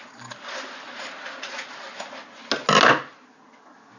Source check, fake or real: real